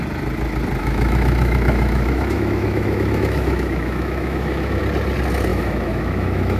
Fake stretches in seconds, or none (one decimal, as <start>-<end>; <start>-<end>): 0.8-4.8; 5.5-6.6